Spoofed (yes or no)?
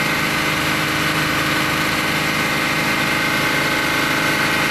no